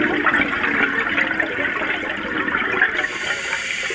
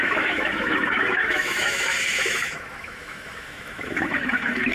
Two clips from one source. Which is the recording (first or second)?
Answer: first